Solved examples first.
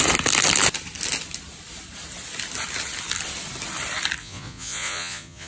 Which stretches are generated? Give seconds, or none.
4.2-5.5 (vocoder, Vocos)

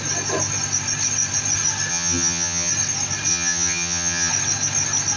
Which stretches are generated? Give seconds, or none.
1.9-2.7 (vocoder, HiFi-GAN); 3.3-4.3